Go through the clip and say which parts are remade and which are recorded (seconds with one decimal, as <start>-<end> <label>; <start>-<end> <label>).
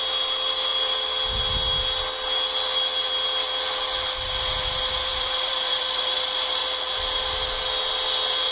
0.0-5.1 recorded; 5.1-6.0 remade; 6.0-8.5 recorded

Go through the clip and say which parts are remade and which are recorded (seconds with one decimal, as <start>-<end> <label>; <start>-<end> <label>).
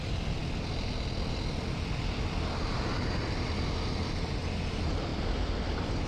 0.0-6.1 recorded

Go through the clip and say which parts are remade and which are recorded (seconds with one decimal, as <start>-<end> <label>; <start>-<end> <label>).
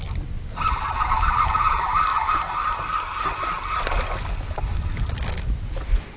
0.0-6.2 recorded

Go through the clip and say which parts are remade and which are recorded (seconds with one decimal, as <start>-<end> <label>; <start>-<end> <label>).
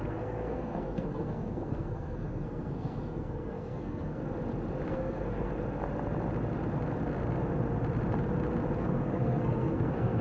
0.0-4.2 remade; 4.2-4.9 recorded; 4.9-5.5 remade; 5.5-8.8 recorded; 8.8-10.2 remade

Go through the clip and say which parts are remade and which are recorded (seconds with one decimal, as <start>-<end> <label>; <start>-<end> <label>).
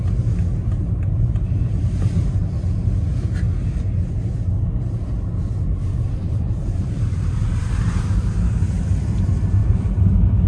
0.0-6.2 recorded; 6.2-8.9 remade; 8.9-9.6 recorded; 9.6-10.5 remade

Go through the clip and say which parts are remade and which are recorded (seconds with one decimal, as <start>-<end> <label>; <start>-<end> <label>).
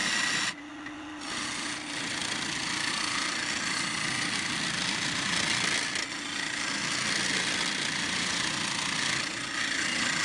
0.0-10.2 recorded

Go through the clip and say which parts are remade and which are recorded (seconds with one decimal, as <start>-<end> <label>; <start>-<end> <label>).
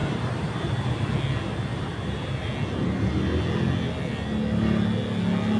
0.0-0.9 remade; 0.9-1.7 recorded; 1.7-2.5 remade; 2.5-5.6 recorded